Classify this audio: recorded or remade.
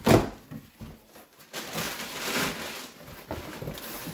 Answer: recorded